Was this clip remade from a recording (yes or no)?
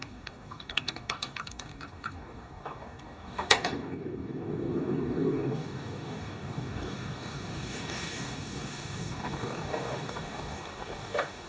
yes